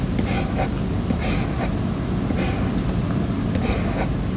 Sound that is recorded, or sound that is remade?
recorded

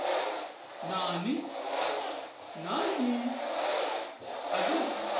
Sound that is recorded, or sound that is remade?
recorded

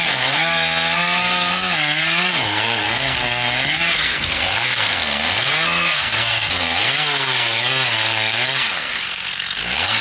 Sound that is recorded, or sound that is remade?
remade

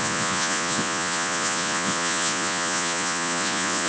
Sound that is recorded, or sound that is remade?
remade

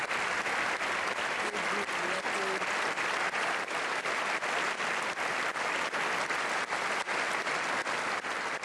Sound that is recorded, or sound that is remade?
recorded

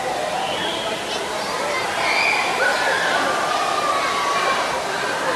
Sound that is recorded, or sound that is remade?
recorded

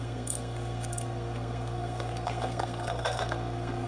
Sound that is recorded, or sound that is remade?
remade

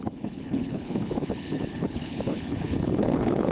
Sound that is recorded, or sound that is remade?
remade